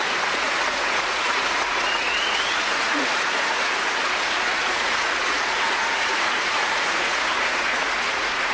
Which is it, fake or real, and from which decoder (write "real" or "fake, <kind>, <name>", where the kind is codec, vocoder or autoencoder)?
fake, vocoder, Vocos